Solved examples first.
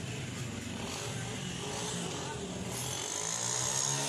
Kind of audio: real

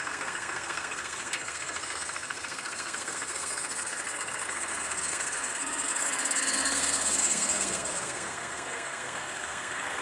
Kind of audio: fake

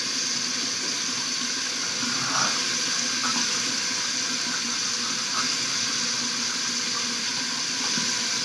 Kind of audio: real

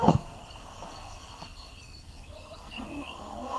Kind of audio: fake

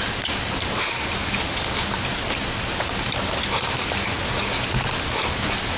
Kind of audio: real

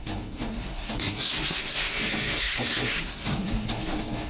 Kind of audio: fake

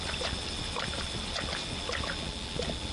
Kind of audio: real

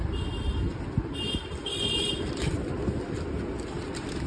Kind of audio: real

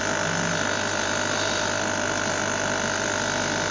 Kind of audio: real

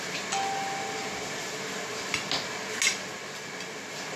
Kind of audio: real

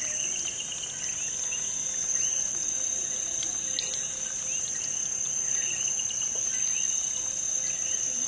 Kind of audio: real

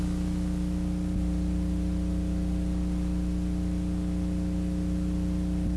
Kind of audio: real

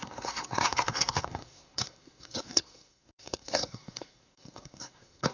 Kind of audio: fake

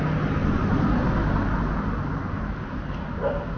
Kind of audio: real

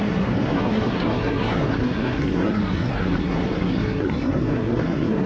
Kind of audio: fake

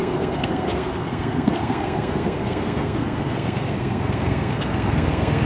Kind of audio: fake